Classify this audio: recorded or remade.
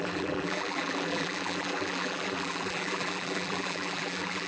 remade